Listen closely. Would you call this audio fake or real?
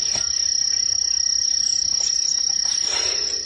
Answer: real